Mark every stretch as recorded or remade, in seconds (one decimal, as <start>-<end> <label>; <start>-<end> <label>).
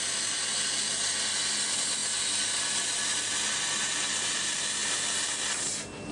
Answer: 0.0-6.1 recorded